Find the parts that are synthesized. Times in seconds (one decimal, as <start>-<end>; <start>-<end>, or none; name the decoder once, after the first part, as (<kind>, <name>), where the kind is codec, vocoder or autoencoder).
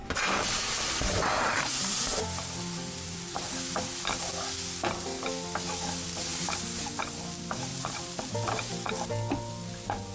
0.0-3.5 (vocoder, BigVGAN v2); 6.3-7.0; 7.7-8.2